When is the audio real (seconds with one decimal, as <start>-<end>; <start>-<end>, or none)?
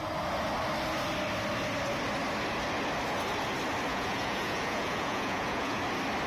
0.0-3.9; 5.8-6.3